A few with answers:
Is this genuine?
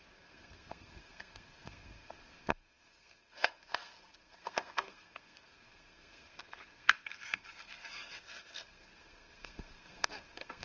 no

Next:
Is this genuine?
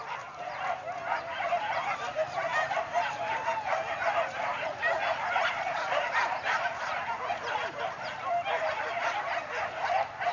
yes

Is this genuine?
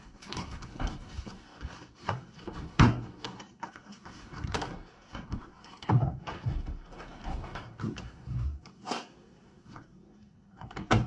no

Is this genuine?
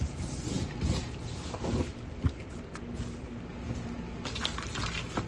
yes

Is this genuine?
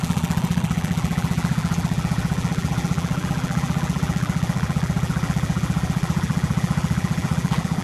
no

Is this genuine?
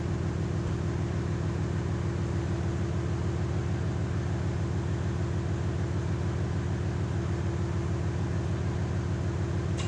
yes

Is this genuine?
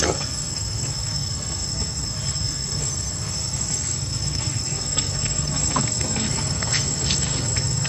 no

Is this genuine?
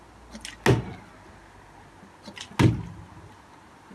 yes